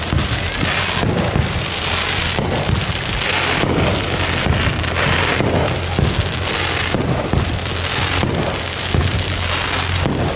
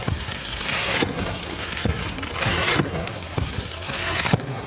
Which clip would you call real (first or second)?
first